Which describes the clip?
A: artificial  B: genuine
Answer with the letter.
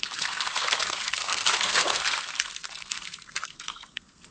A